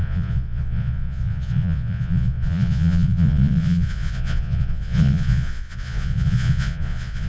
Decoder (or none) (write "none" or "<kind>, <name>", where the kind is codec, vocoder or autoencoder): vocoder, Vocos